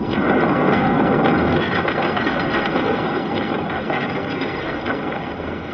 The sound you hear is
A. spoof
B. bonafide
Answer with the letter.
A